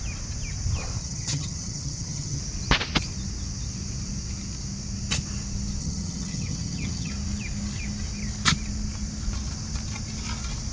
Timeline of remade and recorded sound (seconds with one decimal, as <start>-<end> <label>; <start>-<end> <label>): 0.0-1.0 recorded; 1.0-2.4 remade; 2.4-5.8 recorded; 5.8-7.1 remade; 7.1-10.7 recorded